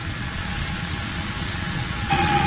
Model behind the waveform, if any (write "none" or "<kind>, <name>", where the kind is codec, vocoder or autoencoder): vocoder, Vocos